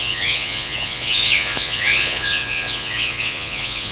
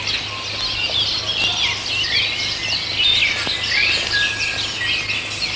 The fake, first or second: first